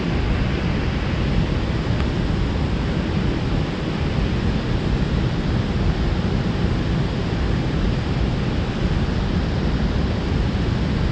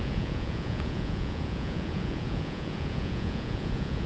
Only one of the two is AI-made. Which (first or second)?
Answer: second